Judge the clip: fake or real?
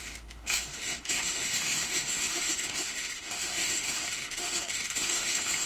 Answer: fake